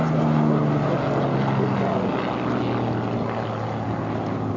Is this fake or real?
real